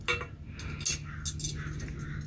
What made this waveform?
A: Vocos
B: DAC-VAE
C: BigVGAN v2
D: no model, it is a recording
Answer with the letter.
D